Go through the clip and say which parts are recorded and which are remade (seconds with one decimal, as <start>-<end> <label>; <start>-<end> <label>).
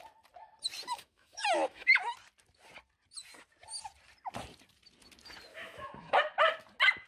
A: 0.0-0.9 recorded; 0.9-2.0 remade; 2.0-5.5 recorded; 5.5-6.2 remade; 6.2-7.1 recorded